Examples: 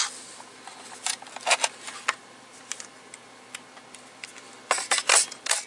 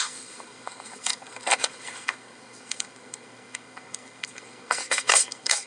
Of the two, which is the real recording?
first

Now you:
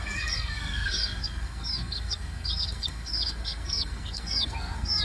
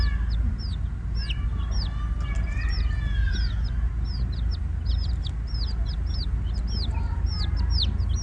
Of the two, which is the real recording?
second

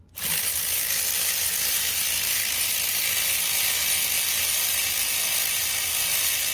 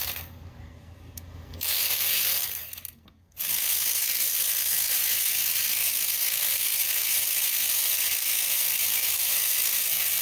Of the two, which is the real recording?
first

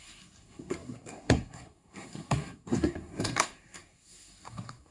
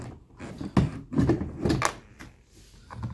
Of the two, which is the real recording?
second